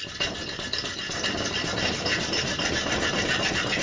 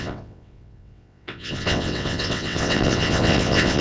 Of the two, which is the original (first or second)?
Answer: first